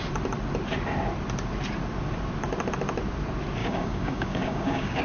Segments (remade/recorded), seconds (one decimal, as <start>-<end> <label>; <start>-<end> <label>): 0.0-3.6 recorded; 3.6-5.0 remade